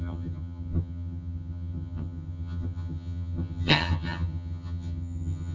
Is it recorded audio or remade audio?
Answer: remade